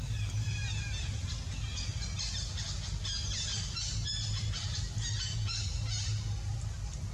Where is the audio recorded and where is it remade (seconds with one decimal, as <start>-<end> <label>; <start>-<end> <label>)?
0.0-7.1 recorded